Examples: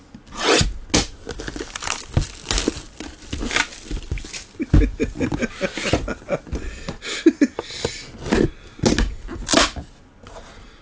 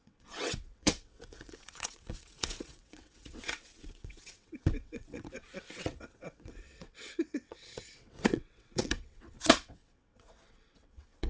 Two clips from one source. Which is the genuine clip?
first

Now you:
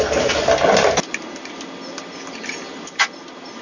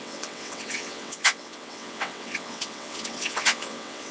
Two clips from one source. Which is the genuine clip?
first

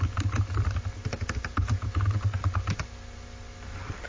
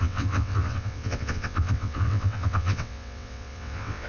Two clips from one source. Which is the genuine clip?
first